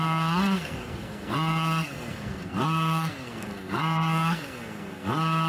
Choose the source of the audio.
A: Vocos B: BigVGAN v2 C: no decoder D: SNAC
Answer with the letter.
D